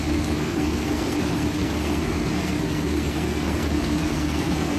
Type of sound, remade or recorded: remade